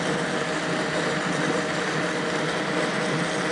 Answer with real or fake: real